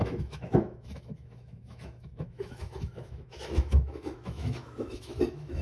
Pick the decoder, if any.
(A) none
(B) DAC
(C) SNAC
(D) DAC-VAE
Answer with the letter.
D